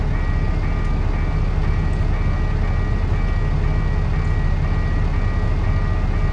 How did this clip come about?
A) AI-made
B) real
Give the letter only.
B